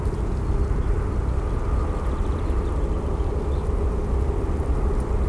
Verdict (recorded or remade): recorded